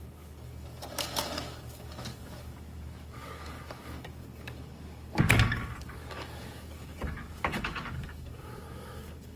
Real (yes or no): no